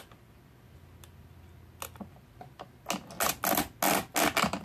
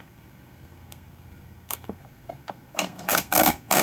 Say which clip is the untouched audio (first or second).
first